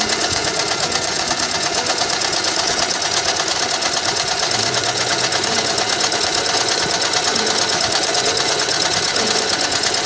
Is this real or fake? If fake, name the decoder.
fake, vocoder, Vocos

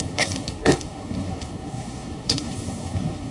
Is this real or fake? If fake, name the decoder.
fake, codec, SNAC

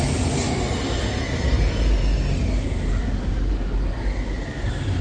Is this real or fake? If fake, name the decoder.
real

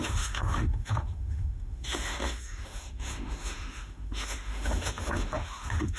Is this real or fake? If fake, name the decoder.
fake, autoencoder, DAC-VAE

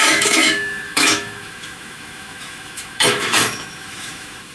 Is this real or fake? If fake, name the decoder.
fake, autoencoder, DAC-VAE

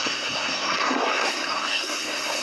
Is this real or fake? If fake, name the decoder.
fake, codec, SNAC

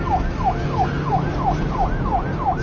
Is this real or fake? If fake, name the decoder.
real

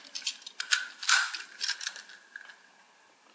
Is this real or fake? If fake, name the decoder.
real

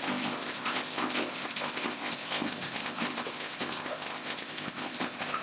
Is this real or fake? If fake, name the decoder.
fake, codec, ZipCodec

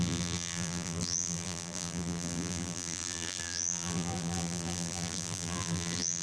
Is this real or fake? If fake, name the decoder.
fake, vocoder, BigVGAN v2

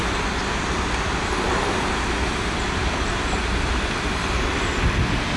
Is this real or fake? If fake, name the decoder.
real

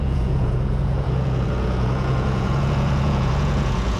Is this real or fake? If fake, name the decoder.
fake, vocoder, Vocos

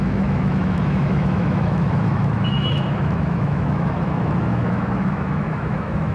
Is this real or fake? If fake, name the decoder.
fake, autoencoder, DAC-VAE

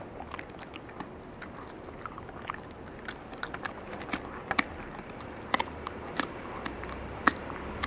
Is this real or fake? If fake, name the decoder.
real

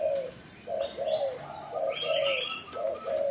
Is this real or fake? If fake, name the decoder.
real